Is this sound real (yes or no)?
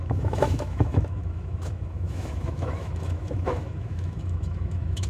no